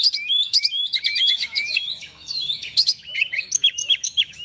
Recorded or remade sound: remade